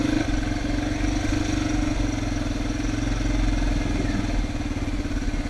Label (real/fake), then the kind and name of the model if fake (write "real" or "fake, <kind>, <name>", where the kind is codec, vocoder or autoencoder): real